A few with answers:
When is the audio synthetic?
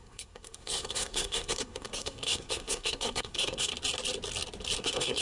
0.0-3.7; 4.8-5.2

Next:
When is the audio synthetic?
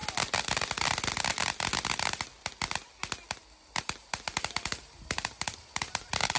3.8-6.4